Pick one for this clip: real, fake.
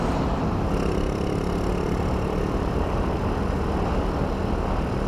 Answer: real